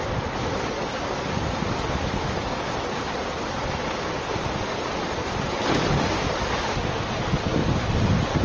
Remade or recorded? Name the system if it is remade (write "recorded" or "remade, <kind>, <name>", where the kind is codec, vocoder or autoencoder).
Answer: recorded